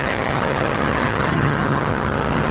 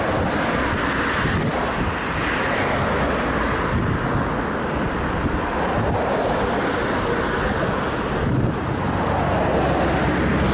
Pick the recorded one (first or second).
second